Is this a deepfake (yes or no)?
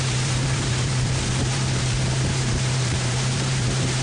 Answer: yes